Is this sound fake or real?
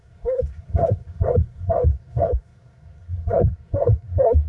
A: fake